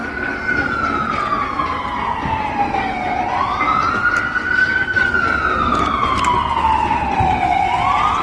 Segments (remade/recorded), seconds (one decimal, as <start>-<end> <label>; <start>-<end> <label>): 0.0-4.6 recorded; 4.6-6.2 remade; 6.2-8.2 recorded